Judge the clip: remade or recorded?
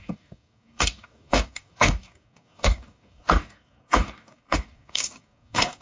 remade